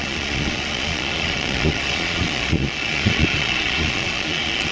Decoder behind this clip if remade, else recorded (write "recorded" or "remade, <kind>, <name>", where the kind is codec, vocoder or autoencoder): remade, vocoder, Vocos